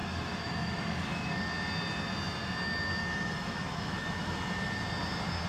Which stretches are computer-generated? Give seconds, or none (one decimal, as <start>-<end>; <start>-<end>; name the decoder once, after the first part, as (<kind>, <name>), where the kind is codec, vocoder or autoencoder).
0.0-1.4 (autoencoder, DAC-VAE); 3.0-4.5